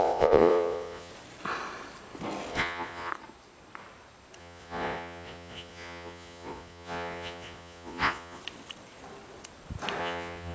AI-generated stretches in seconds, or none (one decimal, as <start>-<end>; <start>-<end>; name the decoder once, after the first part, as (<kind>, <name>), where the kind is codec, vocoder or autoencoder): 0.0-1.1 (vocoder, Vocos); 2.5-3.1; 4.4-8.4; 10.0-10.5